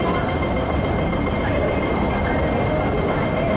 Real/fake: real